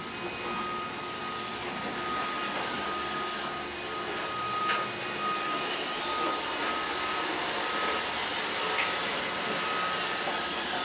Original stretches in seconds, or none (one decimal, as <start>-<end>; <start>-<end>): 0.0-10.8